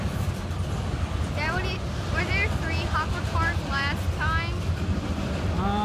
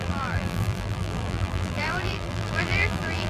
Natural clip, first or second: first